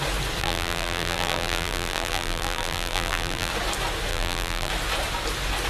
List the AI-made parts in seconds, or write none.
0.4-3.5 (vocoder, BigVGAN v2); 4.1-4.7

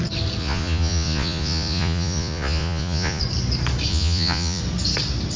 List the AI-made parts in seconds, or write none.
0.4-3.2 (vocoder, Vocos); 3.9-4.6

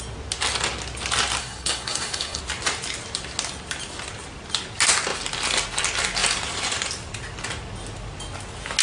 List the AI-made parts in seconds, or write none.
1.4-2.4 (codec, SNAC)

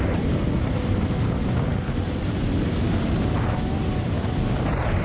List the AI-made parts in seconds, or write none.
none